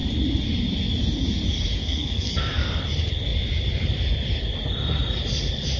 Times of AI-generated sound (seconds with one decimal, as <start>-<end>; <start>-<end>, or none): 1.8-2.8